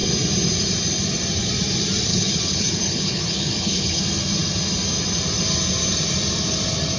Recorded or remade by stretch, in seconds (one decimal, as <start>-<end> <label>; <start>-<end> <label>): 0.0-2.1 recorded; 2.1-4.0 remade; 4.0-7.0 recorded